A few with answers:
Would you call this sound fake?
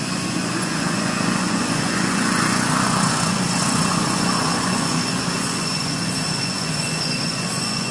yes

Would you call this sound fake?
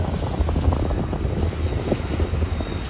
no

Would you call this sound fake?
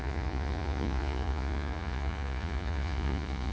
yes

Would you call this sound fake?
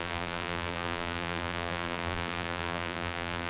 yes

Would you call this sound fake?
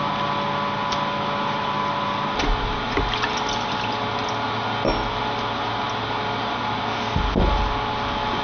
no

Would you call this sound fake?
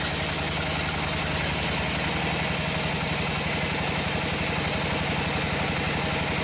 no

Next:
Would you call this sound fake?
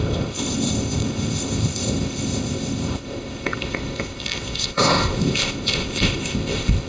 yes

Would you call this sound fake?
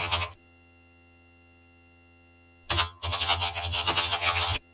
yes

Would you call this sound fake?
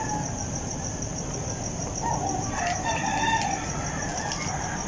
yes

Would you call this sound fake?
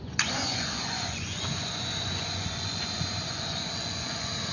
yes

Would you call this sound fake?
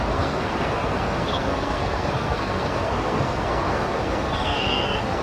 yes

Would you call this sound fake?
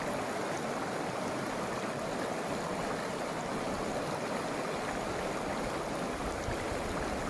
no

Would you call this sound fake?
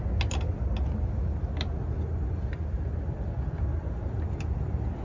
no